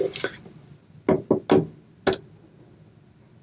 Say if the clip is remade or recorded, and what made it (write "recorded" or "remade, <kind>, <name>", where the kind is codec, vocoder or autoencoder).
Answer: recorded